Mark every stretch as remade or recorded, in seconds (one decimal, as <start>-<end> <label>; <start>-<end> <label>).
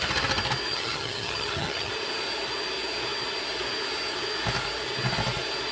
0.0-0.7 recorded; 0.7-1.9 remade; 1.9-5.7 recorded